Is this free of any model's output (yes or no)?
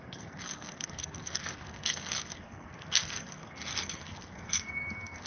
no